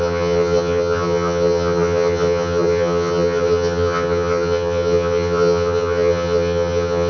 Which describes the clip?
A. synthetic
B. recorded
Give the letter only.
A